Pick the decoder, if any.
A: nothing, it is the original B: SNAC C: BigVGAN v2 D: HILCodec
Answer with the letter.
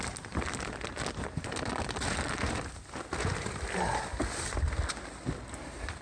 A